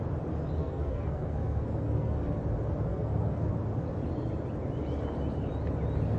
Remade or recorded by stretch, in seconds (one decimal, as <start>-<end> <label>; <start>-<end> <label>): 0.0-0.6 recorded; 0.6-2.4 remade; 2.4-2.9 recorded; 2.9-3.5 remade; 3.5-6.2 recorded